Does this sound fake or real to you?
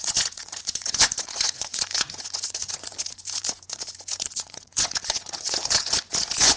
fake